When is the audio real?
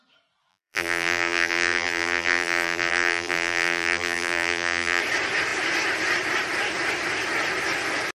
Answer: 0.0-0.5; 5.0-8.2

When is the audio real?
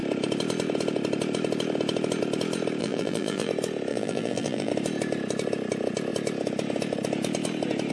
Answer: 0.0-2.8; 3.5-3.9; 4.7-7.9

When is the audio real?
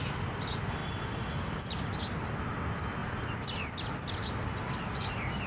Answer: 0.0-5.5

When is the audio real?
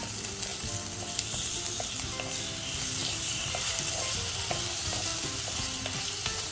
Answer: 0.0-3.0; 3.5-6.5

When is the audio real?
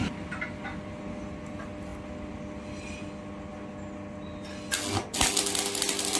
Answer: 0.0-6.2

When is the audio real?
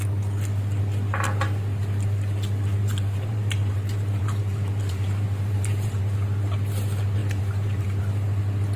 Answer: 0.0-2.8; 6.0-7.2; 8.0-8.8